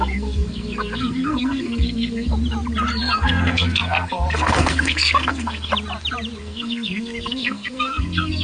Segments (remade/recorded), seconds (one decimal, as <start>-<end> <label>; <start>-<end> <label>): 0.0-2.3 remade; 2.3-3.0 recorded; 3.0-5.7 remade; 5.7-6.4 recorded; 6.4-8.4 remade